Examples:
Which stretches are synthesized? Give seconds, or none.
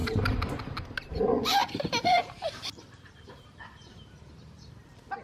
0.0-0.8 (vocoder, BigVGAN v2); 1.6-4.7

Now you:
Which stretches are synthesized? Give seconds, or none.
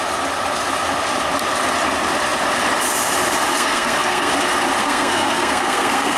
3.5-4.3 (codec, SNAC); 4.8-6.2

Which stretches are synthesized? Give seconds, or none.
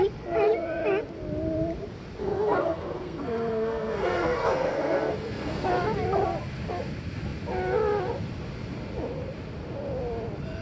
2.2-5.7 (codec, SNAC)